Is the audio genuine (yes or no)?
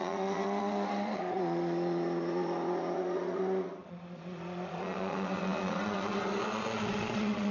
no